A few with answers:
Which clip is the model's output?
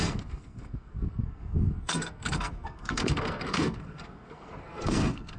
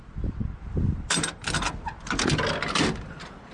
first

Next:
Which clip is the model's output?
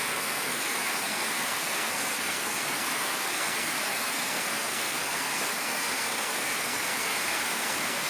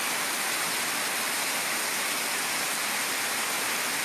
first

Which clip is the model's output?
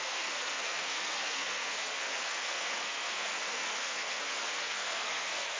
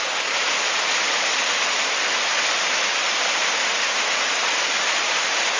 first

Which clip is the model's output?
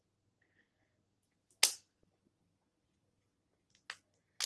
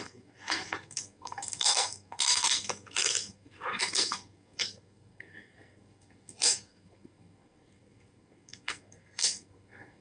second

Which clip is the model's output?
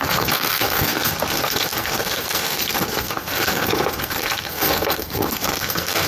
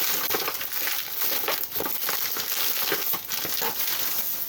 first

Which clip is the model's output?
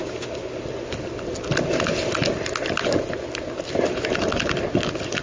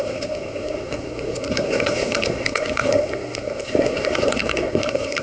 second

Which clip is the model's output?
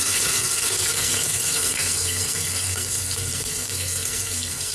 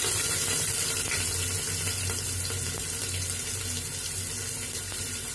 first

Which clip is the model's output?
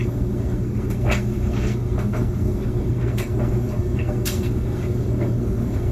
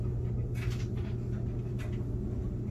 first